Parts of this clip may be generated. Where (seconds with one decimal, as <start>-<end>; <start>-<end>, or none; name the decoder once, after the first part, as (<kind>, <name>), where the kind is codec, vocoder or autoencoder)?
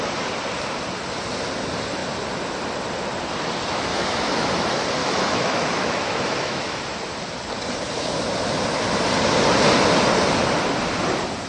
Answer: 3.9-4.5 (autoencoder, DAC-VAE); 5.0-6.8